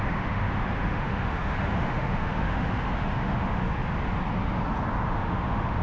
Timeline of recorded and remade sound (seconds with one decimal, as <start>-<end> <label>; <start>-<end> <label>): 0.0-3.6 remade; 3.6-5.1 recorded; 5.1-5.8 remade